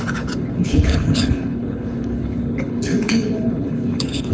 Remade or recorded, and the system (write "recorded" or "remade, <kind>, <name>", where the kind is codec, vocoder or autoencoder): remade, codec, HILCodec